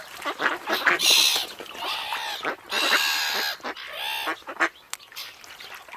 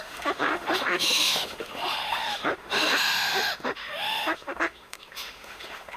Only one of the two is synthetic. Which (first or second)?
second